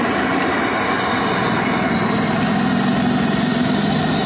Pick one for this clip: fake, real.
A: real